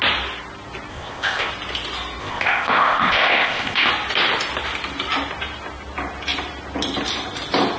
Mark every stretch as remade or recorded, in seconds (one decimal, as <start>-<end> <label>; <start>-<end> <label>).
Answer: 0.0-0.9 recorded; 0.9-1.5 remade; 1.5-2.2 recorded; 2.2-3.9 remade; 3.9-7.8 recorded